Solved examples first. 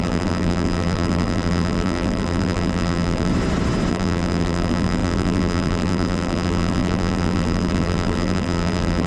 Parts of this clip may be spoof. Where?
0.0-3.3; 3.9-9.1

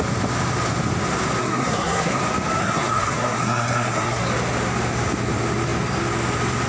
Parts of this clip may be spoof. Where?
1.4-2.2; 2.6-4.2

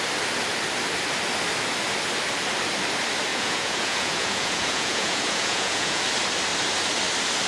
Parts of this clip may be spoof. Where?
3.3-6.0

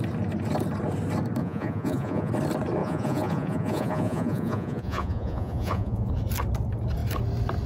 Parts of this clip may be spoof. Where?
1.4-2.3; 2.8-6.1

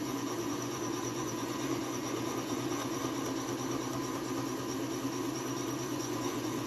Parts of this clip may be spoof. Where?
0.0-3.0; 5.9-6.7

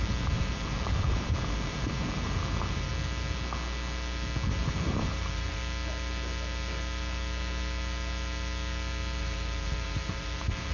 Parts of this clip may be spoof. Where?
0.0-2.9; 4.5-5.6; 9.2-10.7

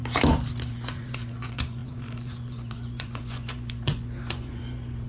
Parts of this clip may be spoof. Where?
0.7-5.1